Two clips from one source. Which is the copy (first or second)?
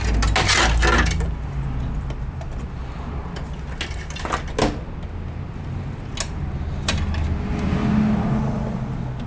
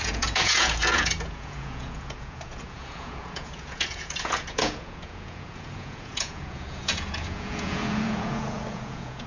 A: second